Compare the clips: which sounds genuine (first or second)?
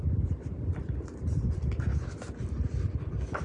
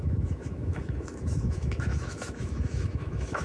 first